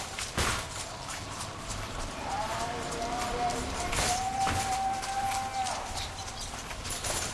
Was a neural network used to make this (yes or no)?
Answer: yes